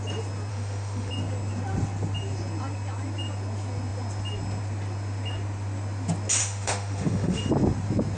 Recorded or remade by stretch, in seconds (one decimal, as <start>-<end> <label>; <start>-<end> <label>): 0.0-0.5 recorded; 0.5-1.1 remade; 1.1-6.4 recorded; 6.4-7.5 remade; 7.5-8.2 recorded

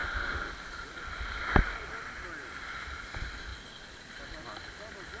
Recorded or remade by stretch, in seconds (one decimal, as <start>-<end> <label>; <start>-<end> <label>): 0.0-0.5 remade; 0.5-5.2 recorded

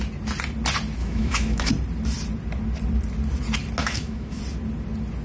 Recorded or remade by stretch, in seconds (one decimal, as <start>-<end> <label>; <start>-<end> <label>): 0.0-1.0 recorded; 1.0-1.7 remade; 1.7-3.8 recorded; 3.8-4.4 remade; 4.4-5.2 recorded

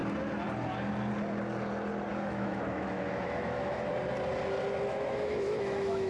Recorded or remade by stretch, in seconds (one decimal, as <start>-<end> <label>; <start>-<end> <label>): 0.0-2.1 recorded; 2.1-3.9 remade; 3.9-4.9 recorded; 4.9-6.1 remade

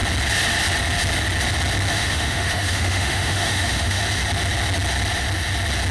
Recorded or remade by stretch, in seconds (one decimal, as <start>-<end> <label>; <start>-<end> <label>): 0.0-2.0 recorded; 2.0-4.0 remade; 4.0-5.9 recorded